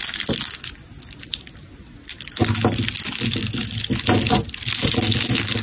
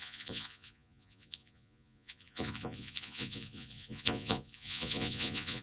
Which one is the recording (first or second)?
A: first